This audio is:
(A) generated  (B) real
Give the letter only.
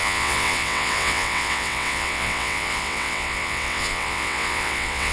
A